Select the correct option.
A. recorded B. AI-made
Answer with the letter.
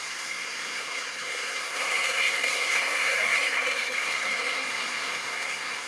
B